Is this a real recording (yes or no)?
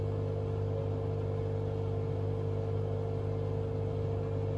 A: yes